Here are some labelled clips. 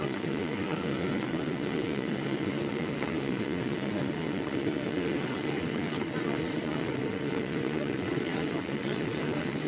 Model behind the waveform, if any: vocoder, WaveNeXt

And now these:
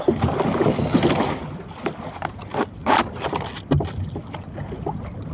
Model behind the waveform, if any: none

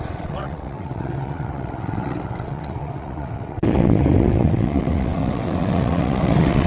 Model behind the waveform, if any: vocoder, WaveNeXt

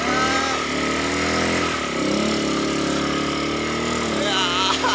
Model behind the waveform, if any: none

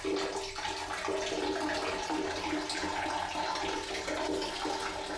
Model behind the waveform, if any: none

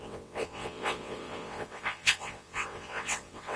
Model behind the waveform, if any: vocoder, WaveNeXt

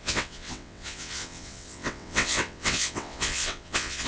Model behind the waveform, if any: vocoder, WaveNeXt